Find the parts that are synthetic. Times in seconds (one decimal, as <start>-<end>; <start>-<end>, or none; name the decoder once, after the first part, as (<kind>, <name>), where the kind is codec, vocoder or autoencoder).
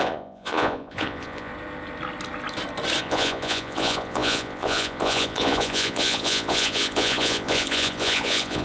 0.0-1.5 (vocoder, Vocos); 3.0-8.6